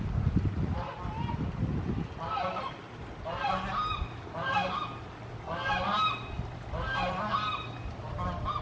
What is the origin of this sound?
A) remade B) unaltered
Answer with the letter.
B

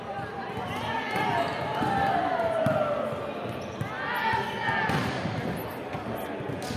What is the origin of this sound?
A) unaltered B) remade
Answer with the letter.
A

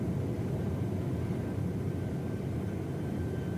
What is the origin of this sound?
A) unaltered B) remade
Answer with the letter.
B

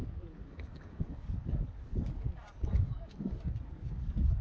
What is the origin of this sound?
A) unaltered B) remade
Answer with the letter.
B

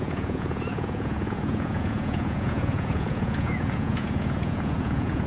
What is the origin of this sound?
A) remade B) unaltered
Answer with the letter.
A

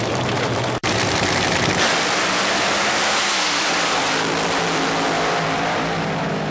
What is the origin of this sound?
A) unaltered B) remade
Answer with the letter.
B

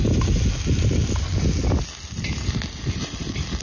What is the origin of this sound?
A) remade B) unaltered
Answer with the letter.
B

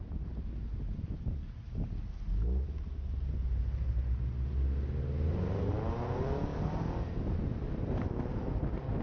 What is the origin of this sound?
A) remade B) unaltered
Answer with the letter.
B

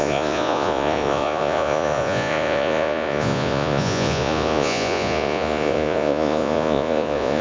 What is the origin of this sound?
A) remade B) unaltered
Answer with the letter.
A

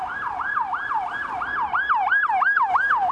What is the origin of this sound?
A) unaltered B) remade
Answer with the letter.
B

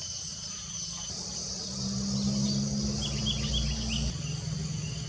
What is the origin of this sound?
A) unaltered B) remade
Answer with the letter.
A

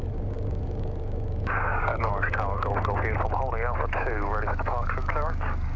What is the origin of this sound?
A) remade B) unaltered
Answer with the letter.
A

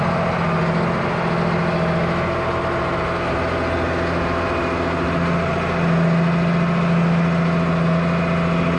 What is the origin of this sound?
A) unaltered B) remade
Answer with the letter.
A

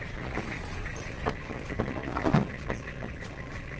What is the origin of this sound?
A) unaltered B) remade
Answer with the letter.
B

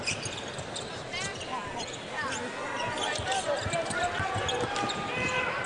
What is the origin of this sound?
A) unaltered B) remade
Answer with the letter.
A